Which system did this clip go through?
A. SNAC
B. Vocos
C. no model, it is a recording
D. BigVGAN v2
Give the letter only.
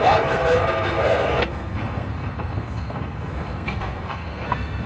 A